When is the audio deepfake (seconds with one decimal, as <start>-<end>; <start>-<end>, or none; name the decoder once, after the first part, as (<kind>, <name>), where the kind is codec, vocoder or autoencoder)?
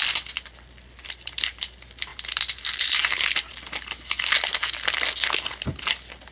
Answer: none